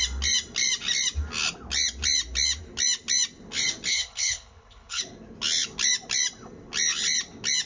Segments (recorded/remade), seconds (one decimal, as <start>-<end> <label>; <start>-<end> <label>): 0.0-3.9 recorded; 3.9-5.0 remade; 5.0-7.7 recorded

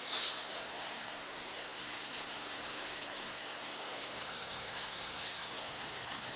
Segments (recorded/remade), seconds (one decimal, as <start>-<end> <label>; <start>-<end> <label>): 0.0-6.4 remade

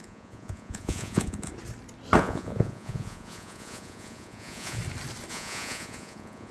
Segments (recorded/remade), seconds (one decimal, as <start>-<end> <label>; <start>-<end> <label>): 0.0-1.5 remade; 1.5-2.2 recorded; 2.2-4.8 remade; 4.8-5.3 recorded; 5.3-6.5 remade

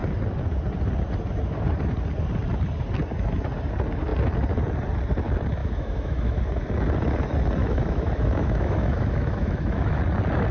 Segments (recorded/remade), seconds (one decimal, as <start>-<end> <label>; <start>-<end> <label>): 0.0-5.6 recorded; 5.6-6.4 remade; 6.4-7.6 recorded; 7.6-10.0 remade; 10.0-10.5 recorded